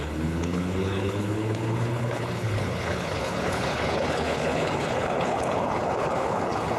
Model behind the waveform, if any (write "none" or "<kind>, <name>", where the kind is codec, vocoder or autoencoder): codec, HILCodec